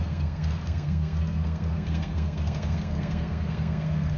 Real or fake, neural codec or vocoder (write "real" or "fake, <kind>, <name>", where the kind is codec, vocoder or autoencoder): fake, codec, SNAC